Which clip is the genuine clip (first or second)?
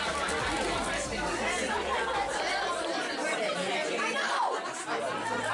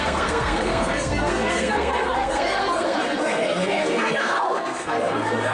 first